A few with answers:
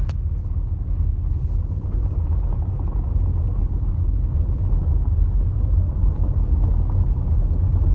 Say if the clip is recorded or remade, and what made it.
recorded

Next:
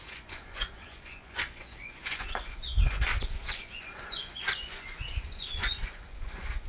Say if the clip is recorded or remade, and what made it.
remade, vocoder, Vocos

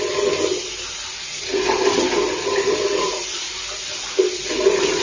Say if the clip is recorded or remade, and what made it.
recorded